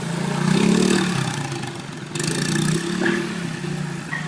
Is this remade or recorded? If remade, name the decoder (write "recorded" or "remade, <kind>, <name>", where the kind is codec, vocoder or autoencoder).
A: recorded